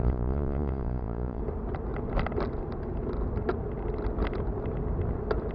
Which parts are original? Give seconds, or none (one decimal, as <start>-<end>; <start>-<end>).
1.4-5.5